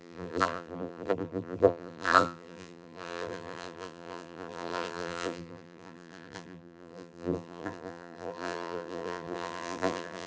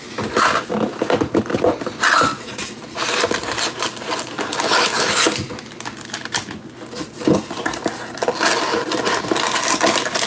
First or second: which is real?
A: second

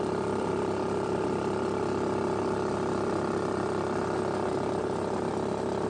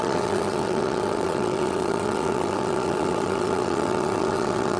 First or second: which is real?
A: first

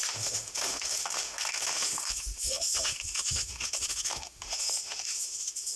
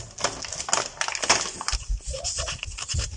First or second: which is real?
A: second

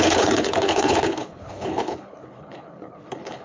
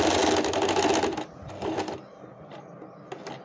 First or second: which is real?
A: second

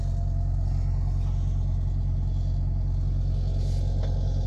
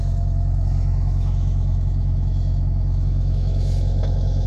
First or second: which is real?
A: first